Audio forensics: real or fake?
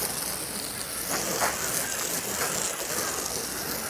real